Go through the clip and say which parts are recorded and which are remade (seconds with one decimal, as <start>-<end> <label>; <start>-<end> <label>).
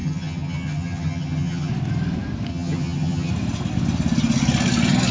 0.0-1.7 remade; 1.7-2.5 recorded; 2.5-3.3 remade; 3.3-5.1 recorded